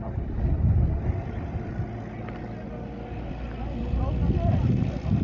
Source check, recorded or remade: recorded